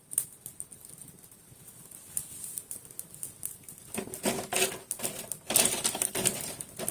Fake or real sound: real